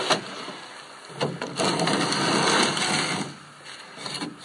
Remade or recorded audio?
recorded